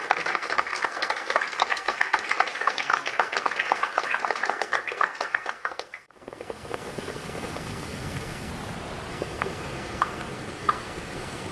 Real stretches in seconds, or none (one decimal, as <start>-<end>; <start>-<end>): 8.5-9.1